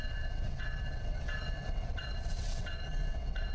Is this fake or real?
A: fake